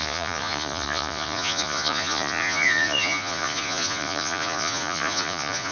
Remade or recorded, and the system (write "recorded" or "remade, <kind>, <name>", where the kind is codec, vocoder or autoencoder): remade, vocoder, Vocos